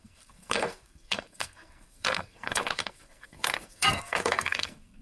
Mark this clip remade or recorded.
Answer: remade